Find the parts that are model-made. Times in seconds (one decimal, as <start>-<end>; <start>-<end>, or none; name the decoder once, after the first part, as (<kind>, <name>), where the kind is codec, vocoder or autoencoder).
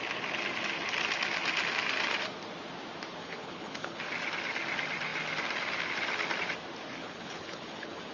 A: 3.2-4.0 (codec, HILCodec); 7.0-8.1